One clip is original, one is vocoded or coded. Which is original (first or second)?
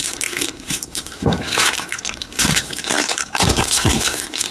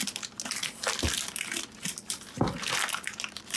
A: second